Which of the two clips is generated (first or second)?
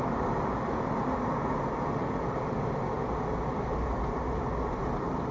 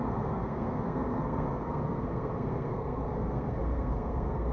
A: second